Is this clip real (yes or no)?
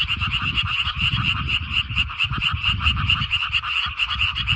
no